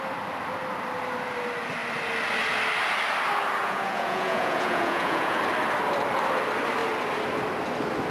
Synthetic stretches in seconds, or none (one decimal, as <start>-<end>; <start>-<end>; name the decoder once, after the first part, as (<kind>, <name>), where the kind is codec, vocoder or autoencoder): 3.6-5.4 (vocoder, Vocos)